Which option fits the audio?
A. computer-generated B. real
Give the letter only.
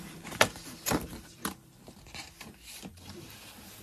A